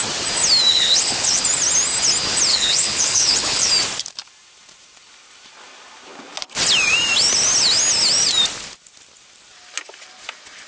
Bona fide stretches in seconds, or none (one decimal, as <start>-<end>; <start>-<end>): 0.0-0.7; 1.4-2.5; 3.7-10.7